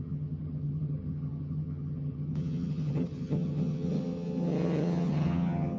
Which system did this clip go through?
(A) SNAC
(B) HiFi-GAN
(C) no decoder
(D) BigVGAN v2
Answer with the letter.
B